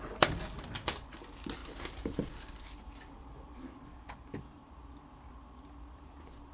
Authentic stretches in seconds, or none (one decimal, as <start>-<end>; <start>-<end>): 0.0-1.6; 4.4-6.5